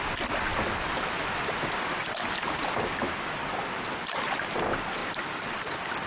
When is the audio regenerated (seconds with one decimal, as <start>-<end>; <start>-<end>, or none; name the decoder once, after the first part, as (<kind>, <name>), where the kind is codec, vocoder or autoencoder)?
5.0-6.1 (vocoder, BigVGAN v2)